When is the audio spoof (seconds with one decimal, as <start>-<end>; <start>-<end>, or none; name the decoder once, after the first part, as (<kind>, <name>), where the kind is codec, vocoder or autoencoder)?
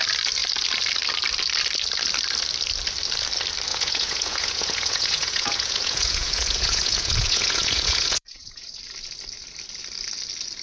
3.7-8.8 (vocoder, Vocos)